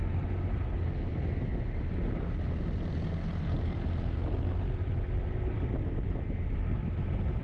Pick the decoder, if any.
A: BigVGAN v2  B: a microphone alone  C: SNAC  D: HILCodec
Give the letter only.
B